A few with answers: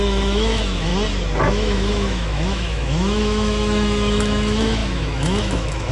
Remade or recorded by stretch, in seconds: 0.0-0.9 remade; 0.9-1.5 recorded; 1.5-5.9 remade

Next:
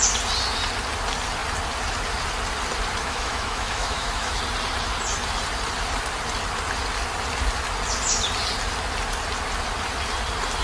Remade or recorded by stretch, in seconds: 0.0-3.0 recorded; 3.0-4.4 remade; 4.4-10.6 recorded

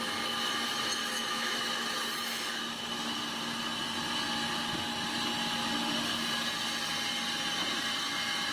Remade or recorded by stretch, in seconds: 0.0-1.0 recorded; 1.0-2.6 remade; 2.6-8.5 recorded

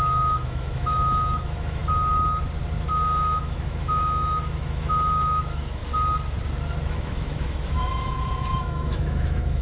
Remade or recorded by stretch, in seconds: 0.0-1.8 remade; 1.8-2.9 recorded; 2.9-5.8 remade; 5.8-6.8 recorded; 6.8-9.6 remade

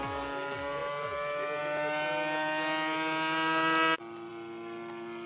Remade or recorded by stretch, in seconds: 0.0-5.3 recorded

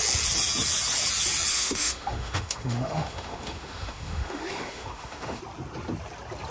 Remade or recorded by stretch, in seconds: 0.0-1.5 recorded; 1.5-5.4 remade; 5.4-6.5 recorded

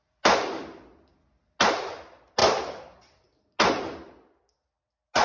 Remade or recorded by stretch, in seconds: 0.0-5.2 recorded

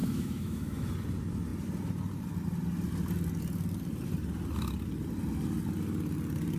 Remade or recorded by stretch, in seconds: 0.0-0.9 remade; 0.9-6.6 recorded